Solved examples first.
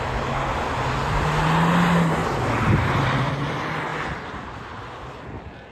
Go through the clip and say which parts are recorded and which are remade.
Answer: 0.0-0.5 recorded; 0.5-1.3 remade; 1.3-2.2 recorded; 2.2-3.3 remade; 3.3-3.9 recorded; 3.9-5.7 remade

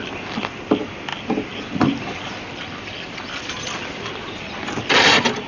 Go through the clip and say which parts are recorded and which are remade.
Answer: 0.0-1.1 recorded; 1.1-4.4 remade; 4.4-5.5 recorded

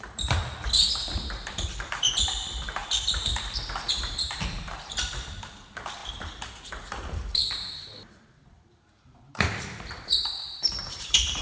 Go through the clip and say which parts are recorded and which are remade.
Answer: 0.0-0.4 remade; 0.4-1.5 recorded; 1.5-11.4 remade

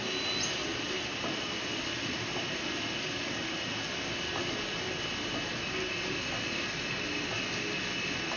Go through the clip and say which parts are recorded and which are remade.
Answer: 0.0-0.6 recorded; 0.6-5.6 remade; 5.6-8.4 recorded

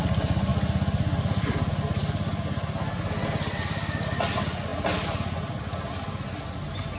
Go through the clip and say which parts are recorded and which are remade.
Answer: 0.0-7.0 recorded

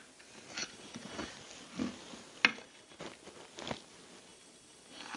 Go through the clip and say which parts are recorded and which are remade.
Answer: 0.0-0.6 recorded; 0.6-1.3 remade; 1.3-2.5 recorded; 2.5-3.0 remade; 3.0-4.3 recorded; 4.3-5.2 remade